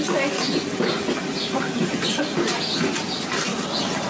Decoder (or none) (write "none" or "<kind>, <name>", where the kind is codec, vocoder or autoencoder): none